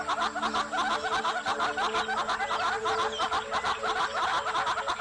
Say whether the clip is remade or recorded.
recorded